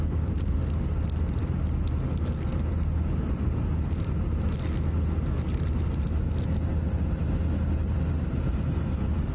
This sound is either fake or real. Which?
real